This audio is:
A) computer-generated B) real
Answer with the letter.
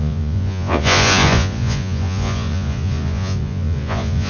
A